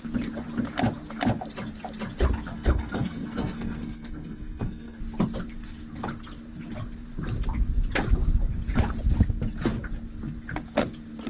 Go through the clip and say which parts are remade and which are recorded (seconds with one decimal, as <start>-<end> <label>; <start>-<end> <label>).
0.0-2.5 recorded; 2.5-5.0 remade; 5.0-11.3 recorded